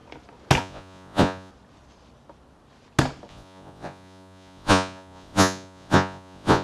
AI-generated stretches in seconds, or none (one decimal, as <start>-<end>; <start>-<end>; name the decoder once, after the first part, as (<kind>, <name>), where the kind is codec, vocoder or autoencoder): 0.6-1.5 (vocoder, Vocos); 3.3-6.6